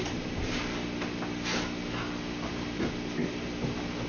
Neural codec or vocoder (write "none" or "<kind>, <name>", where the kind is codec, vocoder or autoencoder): none